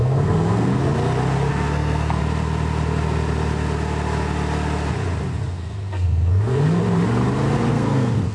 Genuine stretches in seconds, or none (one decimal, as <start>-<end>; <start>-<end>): 0.7-1.5; 2.2-5.5; 6.8-7.7